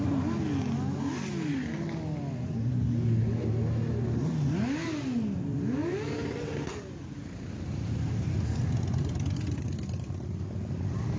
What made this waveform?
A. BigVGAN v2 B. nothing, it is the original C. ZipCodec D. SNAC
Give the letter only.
B